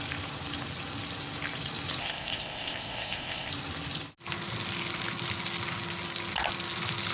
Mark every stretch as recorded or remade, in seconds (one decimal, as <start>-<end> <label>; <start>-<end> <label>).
0.0-2.0 recorded; 2.0-3.5 remade; 3.5-7.1 recorded